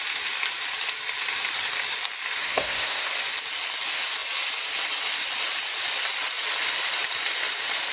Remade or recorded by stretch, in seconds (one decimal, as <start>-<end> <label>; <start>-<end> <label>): 0.0-2.4 recorded; 2.4-3.1 remade; 3.1-7.9 recorded